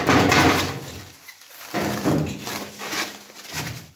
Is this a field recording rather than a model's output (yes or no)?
no